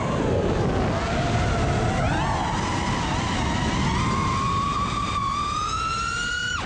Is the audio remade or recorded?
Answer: recorded